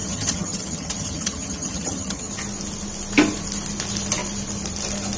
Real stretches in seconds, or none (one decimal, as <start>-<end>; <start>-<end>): 2.3-5.2